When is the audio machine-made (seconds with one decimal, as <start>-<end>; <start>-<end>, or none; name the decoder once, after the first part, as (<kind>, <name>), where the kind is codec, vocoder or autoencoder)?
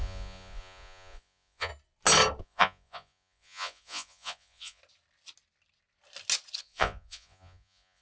0.0-1.7 (vocoder, Vocos); 2.4-4.8; 6.6-8.0